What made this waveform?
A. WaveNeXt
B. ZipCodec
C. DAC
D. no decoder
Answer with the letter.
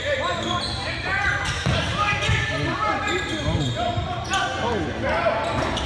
D